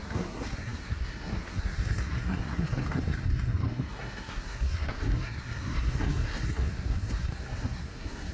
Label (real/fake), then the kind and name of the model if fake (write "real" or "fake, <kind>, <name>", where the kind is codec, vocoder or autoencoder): fake, codec, SNAC